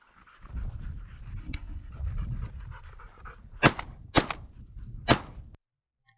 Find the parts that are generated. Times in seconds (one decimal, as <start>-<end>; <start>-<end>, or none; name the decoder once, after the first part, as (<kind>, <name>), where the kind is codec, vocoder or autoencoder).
1.4-1.9 (codec, SNAC)